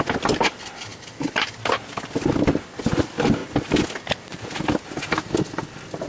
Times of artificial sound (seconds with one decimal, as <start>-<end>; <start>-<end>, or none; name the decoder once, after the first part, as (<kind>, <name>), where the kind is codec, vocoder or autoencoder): none